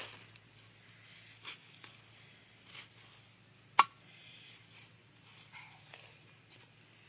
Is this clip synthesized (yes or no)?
no